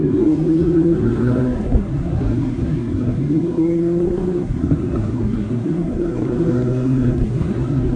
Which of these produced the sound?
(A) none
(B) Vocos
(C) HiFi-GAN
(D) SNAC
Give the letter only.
D